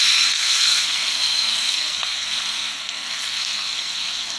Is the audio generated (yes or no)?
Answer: yes